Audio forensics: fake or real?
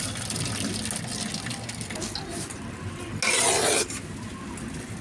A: real